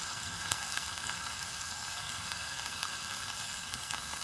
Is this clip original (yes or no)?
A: no